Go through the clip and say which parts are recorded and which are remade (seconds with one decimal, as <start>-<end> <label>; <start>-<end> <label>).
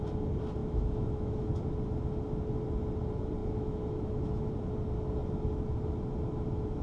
0.0-0.6 recorded; 0.6-1.5 remade; 1.5-3.4 recorded; 3.4-4.5 remade; 4.5-6.8 recorded